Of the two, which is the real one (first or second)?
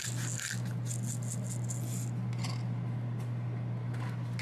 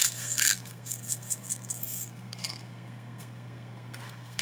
first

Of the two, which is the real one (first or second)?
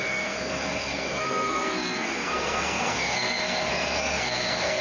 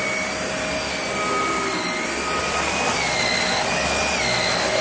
second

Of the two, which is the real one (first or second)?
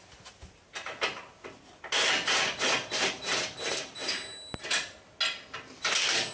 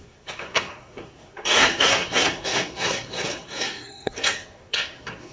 first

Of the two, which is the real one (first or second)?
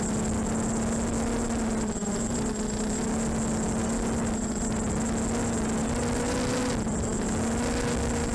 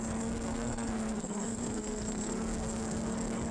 first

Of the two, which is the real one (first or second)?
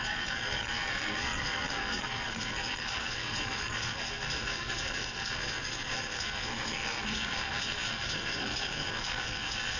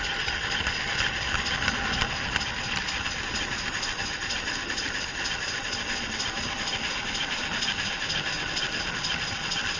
second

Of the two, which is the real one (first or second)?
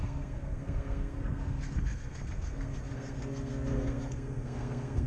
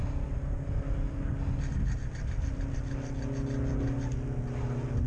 second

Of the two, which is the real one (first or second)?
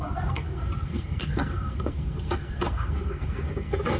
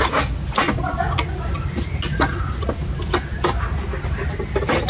second